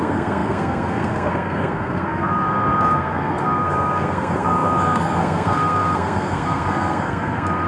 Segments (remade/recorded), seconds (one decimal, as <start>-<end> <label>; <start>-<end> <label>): 0.0-7.7 remade